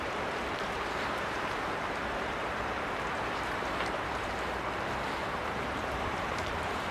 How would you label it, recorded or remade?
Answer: remade